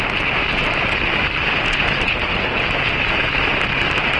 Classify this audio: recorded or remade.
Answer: recorded